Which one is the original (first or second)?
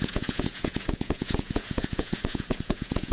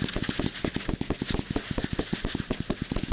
second